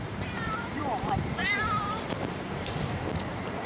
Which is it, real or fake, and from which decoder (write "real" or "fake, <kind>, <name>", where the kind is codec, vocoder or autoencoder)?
fake, vocoder, BigVGAN v2